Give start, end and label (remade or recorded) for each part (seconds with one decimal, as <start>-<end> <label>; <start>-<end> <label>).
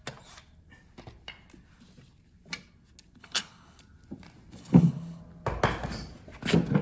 0.0-3.2 recorded; 3.2-3.8 remade; 3.8-4.6 recorded; 4.6-5.2 remade; 5.2-6.8 recorded